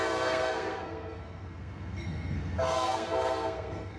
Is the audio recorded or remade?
remade